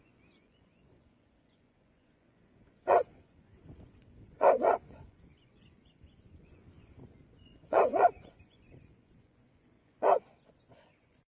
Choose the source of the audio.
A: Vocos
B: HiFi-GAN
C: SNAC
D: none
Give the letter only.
A